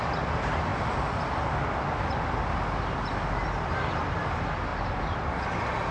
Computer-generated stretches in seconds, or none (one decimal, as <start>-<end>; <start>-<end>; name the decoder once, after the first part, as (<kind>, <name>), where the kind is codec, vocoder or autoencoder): none